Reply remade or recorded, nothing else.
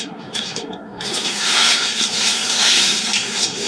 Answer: remade